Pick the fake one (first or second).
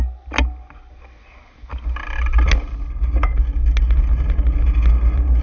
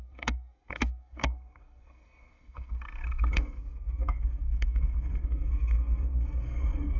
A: second